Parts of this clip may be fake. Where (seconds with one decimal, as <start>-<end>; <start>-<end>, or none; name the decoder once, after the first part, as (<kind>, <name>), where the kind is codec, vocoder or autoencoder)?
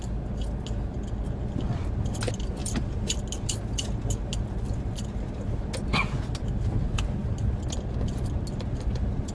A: 2.6-3.2 (vocoder, BigVGAN v2); 7.2-7.8